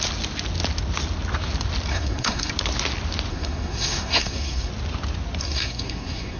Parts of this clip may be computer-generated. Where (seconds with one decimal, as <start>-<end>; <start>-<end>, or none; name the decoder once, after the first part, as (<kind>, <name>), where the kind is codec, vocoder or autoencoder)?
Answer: 1.9-2.5 (codec, SNAC); 3.3-4.7; 5.4-6.4